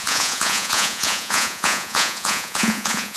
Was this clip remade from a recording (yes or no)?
yes